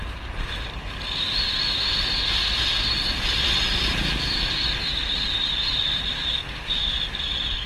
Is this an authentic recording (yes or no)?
yes